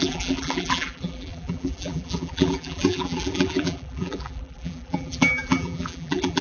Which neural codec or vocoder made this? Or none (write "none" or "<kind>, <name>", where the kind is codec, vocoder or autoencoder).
vocoder, BigVGAN v2